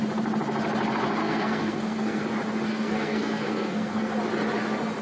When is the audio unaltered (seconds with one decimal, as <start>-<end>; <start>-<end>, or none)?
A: 0.0-1.2; 2.2-2.7; 4.1-5.0